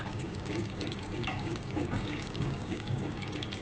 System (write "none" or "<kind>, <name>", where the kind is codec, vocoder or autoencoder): codec, DAC